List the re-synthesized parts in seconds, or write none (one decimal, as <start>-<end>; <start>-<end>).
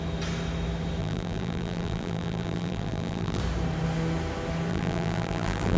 1.0-3.4; 4.7-5.8